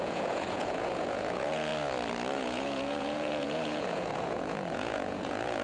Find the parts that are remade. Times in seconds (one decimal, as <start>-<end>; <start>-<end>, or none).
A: 0.0-1.7; 2.3-5.6